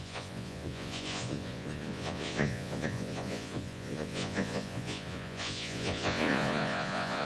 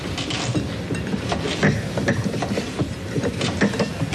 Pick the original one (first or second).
second